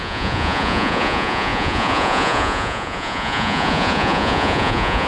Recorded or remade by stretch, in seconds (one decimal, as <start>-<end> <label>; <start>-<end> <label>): 0.0-5.1 remade